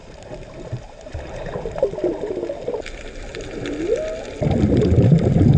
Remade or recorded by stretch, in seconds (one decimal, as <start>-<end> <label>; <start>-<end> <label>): 0.0-1.5 remade; 1.5-5.6 recorded